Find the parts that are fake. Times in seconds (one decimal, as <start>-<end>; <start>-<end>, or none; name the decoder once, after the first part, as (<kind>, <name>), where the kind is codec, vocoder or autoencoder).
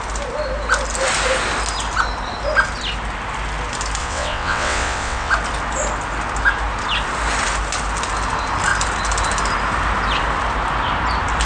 4.0-5.3 (vocoder, WaveNeXt)